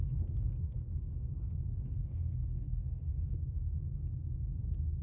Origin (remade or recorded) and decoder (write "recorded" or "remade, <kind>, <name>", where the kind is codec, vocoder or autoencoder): remade, codec, SNAC